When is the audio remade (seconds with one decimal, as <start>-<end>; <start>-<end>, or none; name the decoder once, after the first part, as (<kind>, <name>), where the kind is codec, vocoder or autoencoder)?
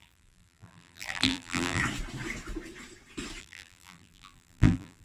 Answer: 0.0-1.8 (vocoder, BigVGAN v2); 3.4-5.0